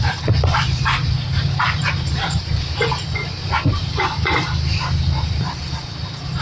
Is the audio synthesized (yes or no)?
yes